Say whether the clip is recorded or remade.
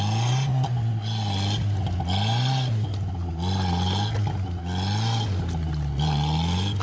recorded